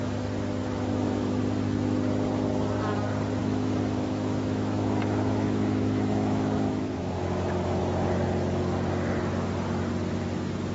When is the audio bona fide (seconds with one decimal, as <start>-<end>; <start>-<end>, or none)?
0.0-0.6; 1.4-3.4; 7.8-10.7